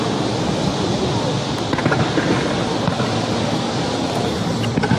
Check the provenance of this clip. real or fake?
real